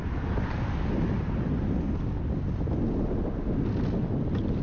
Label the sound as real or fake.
real